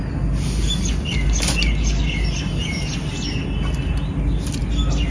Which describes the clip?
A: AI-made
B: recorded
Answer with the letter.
B